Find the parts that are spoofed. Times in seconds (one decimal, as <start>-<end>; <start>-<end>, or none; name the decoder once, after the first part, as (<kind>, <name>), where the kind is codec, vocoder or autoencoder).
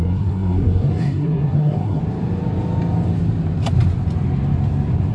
0.0-2.0 (codec, SNAC)